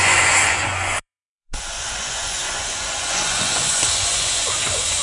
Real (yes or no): no